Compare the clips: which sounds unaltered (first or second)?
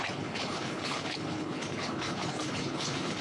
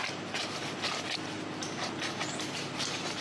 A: second